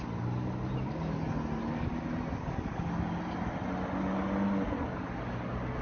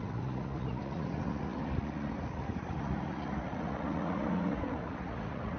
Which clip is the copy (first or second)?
second